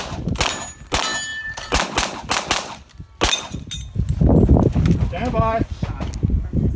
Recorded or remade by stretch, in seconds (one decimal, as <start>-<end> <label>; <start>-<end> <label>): 0.0-6.8 recorded